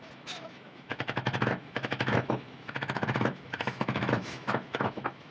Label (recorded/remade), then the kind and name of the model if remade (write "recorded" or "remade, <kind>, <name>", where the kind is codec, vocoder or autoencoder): remade, autoencoder, DAC-VAE